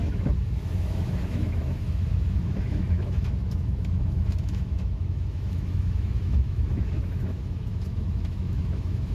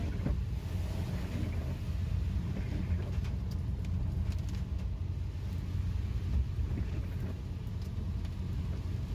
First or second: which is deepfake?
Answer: first